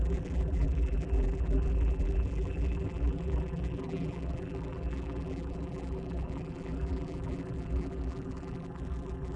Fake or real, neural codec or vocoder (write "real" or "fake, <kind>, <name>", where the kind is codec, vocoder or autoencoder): fake, vocoder, BigVGAN v2